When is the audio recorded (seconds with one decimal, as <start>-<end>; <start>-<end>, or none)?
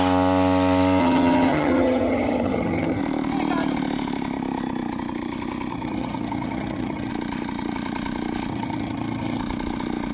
0.0-1.0; 3.0-5.7; 7.1-8.5; 9.4-10.1